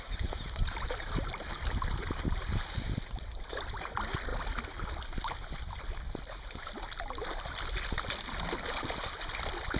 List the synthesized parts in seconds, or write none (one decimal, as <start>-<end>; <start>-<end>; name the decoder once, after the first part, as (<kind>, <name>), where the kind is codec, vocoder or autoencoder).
none